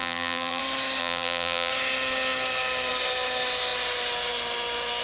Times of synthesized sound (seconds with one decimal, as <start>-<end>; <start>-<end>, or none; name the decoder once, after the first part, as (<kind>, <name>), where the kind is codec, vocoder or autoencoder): 0.0-0.6 (vocoder, BigVGAN v2); 1.0-1.7